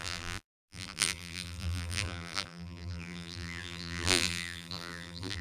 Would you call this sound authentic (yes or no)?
no